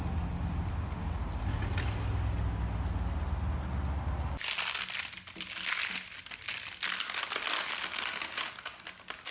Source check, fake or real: real